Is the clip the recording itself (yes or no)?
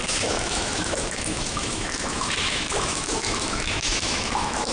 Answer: no